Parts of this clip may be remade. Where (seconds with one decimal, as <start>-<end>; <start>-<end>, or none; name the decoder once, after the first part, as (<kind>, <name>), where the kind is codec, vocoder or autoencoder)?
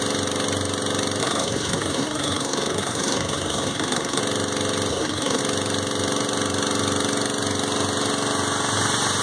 1.2-4.2 (codec, SNAC); 4.9-5.4